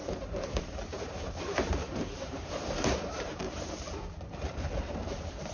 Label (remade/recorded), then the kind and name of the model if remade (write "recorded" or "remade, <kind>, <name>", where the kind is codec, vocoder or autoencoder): remade, vocoder, BigVGAN v2